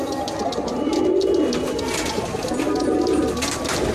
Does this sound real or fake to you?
real